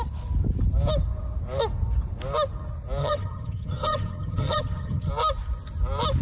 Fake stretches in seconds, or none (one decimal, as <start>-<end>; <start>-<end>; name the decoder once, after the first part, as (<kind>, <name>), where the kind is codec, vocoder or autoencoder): 3.0-5.1 (vocoder, HiFi-GAN)